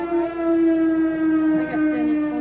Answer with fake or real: real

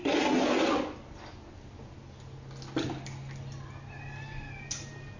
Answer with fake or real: real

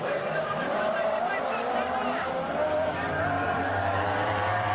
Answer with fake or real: fake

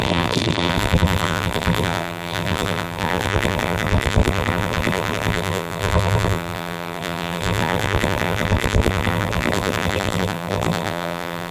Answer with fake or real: fake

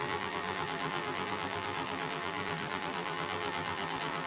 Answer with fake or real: fake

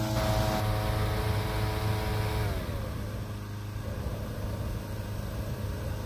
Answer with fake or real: real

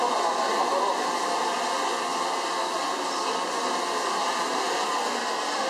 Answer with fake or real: real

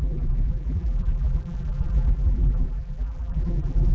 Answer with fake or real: fake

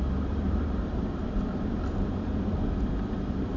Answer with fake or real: fake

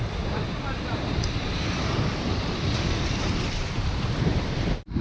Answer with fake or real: fake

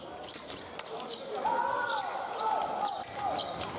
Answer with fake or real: real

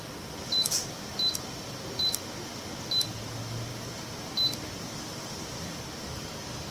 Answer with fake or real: real